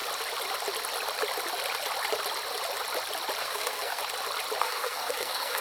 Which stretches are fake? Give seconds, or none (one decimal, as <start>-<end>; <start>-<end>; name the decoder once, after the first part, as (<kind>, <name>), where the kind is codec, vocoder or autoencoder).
3.4-4.0 (codec, SNAC); 4.6-5.6